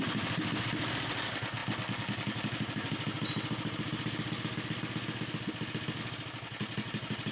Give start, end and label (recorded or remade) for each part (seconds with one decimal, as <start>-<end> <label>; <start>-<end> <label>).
0.0-7.3 recorded